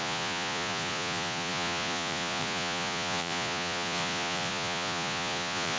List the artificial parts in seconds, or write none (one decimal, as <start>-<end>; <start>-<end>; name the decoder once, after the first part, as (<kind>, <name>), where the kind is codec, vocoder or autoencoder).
0.0-5.8 (vocoder, Vocos)